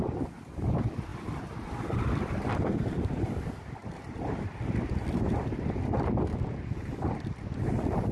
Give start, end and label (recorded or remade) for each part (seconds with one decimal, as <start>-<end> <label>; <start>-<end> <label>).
0.0-3.8 recorded; 3.8-4.6 remade; 4.6-8.1 recorded